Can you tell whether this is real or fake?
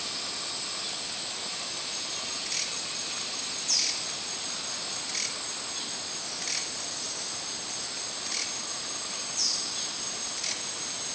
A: real